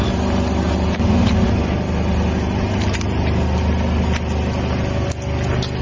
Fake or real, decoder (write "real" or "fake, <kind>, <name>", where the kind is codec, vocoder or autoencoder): real